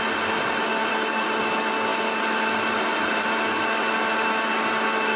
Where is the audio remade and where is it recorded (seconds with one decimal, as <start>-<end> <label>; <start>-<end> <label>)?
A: 0.0-5.2 recorded